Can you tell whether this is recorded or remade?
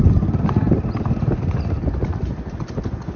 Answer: recorded